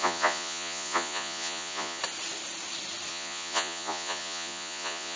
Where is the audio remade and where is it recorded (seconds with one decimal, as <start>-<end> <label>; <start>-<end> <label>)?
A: 0.0-2.0 remade; 2.0-3.1 recorded; 3.1-5.2 remade